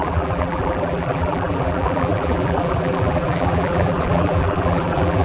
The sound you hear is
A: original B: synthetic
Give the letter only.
B